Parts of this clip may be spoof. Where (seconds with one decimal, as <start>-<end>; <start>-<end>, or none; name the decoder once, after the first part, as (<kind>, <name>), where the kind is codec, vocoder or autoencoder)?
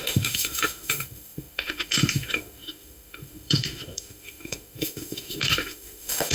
0.0-6.3 (autoencoder, DAC-VAE)